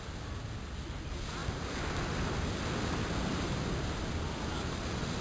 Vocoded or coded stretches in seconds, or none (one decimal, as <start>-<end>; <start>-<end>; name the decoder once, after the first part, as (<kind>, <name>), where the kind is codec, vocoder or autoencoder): none